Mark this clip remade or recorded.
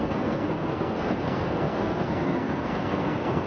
remade